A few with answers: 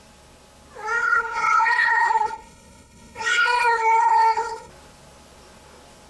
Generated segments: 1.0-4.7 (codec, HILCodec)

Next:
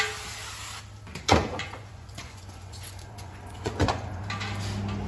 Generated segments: 1.1-4.2 (vocoder, Vocos)

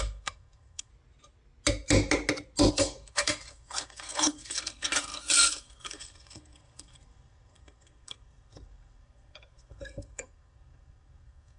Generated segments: 0.0-0.9 (codec, SNAC); 2.7-11.6